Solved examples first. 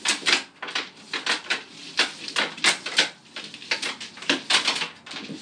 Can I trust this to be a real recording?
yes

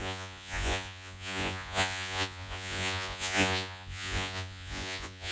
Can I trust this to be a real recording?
no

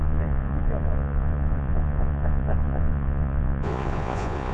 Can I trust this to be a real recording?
no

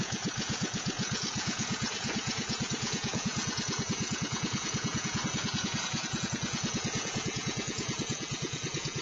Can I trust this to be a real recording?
no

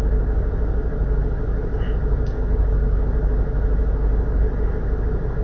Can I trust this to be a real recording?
yes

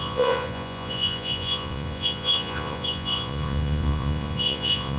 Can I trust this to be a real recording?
no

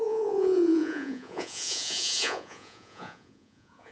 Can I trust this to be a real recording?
no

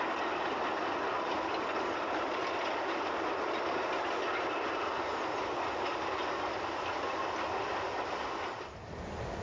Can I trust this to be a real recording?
yes